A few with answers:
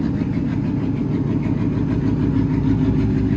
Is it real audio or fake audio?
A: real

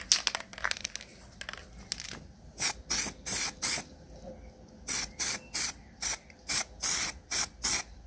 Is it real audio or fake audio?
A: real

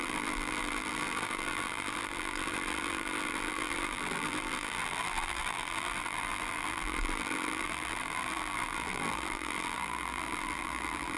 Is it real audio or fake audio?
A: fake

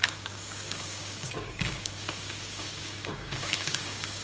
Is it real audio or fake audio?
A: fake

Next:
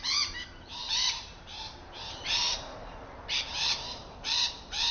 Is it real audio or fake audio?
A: fake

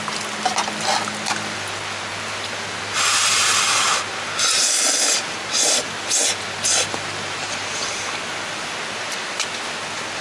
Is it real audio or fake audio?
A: real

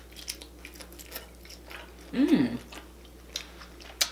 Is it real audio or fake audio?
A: real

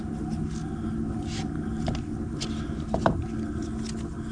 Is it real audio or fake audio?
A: real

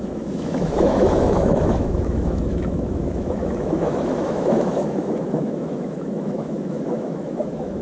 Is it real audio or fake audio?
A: fake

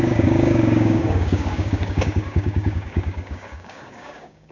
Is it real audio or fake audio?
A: fake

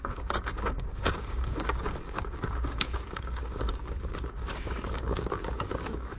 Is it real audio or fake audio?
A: fake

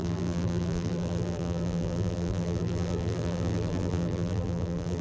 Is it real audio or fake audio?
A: fake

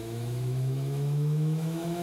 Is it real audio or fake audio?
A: fake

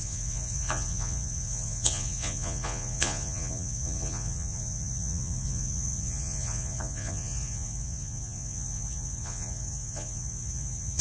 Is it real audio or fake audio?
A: fake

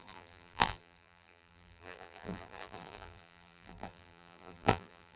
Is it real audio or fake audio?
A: fake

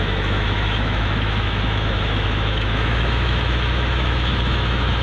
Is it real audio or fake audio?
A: fake